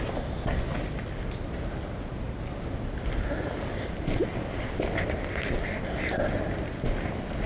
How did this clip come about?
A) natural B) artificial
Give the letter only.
A